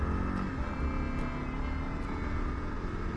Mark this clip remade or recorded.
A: recorded